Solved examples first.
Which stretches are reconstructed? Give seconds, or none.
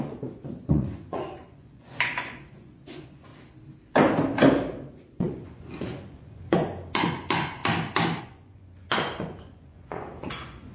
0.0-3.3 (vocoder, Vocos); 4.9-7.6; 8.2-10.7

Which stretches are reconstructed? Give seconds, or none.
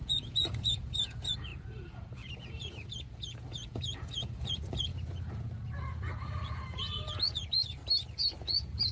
0.0-7.8 (vocoder, Vocos); 8.4-8.9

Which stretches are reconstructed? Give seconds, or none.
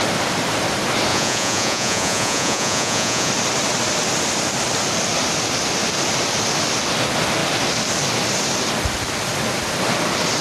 1.1-3.3 (vocoder, Vocos)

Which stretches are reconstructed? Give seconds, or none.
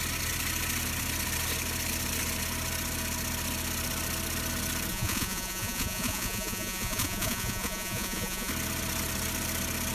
4.9-8.5 (vocoder, Vocos)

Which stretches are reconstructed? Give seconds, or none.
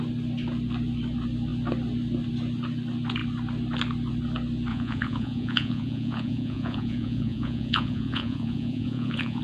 4.7-9.4 (vocoder, Vocos)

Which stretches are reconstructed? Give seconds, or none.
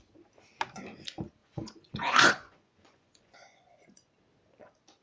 1.4-4.1 (vocoder, Vocos)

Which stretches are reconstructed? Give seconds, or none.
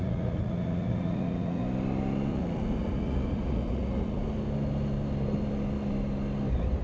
0.0-1.6 (vocoder, Vocos); 2.3-4.2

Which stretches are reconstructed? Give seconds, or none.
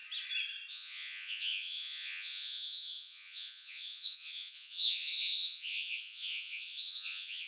0.7-7.5 (vocoder, Vocos)